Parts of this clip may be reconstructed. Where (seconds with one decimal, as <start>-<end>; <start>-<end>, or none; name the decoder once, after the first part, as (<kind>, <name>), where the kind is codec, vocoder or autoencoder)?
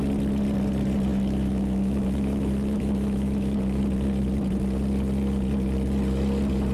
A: 1.1-3.8 (autoencoder, DAC-VAE)